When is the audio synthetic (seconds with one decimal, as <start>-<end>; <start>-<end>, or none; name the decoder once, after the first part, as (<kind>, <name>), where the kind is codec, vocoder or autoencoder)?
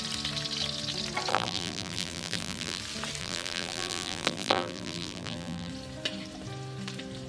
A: 1.3-2.8 (vocoder, BigVGAN v2); 3.2-5.7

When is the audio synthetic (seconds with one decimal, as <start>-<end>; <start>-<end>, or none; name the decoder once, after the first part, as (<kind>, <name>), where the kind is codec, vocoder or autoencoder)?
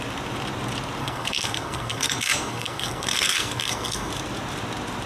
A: 1.0-4.1 (codec, SNAC)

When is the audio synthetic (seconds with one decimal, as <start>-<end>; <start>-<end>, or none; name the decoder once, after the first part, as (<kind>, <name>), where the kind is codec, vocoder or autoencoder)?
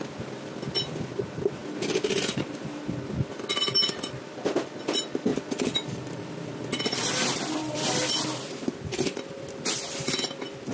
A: 5.3-9.8 (vocoder, BigVGAN v2)